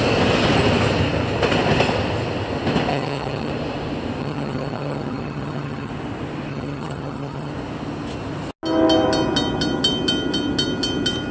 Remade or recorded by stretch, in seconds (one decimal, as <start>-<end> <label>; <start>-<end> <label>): 0.0-2.9 recorded; 2.9-3.5 remade; 3.5-4.2 recorded; 4.2-5.9 remade; 5.9-6.5 recorded; 6.5-7.5 remade; 7.5-11.3 recorded